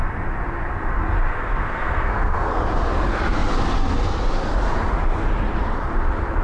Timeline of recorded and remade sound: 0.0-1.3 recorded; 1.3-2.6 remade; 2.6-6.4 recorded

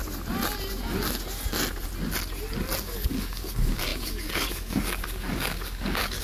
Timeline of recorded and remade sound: 0.0-2.8 recorded; 2.8-6.2 remade

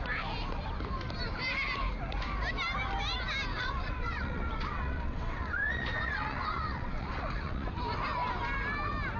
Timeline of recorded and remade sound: 0.0-3.5 recorded; 3.5-7.7 remade; 7.7-9.2 recorded

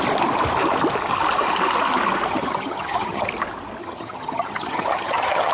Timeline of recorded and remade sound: 0.0-2.3 recorded; 2.3-3.2 remade; 3.2-3.8 recorded; 3.8-5.5 remade

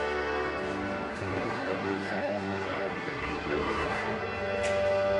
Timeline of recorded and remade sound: 0.0-1.1 recorded; 1.1-4.2 remade; 4.2-5.2 recorded

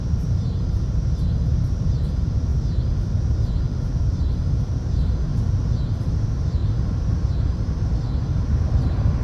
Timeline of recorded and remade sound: 0.0-2.5 remade; 2.5-3.8 recorded; 3.8-5.3 remade; 5.3-6.0 recorded; 6.0-9.2 remade